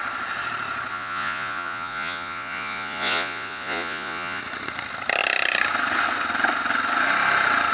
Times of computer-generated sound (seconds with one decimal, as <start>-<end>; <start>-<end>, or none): 0.9-4.4